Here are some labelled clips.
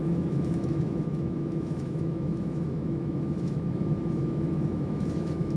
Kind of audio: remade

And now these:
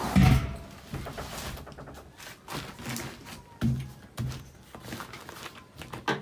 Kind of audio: recorded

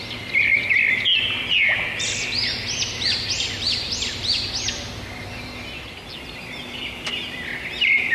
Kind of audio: recorded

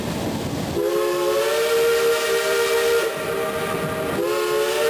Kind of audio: recorded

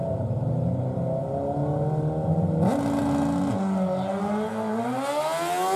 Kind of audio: recorded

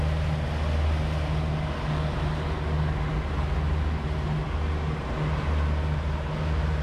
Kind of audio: recorded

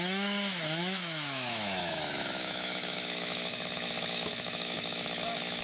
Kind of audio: remade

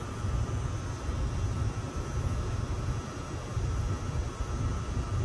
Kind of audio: recorded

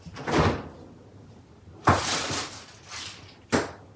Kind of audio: recorded